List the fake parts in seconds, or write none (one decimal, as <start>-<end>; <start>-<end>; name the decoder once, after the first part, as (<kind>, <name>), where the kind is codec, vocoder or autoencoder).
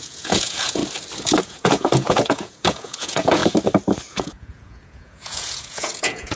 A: 0.0-0.8 (vocoder, Vocos); 1.4-3.4; 4.1-6.4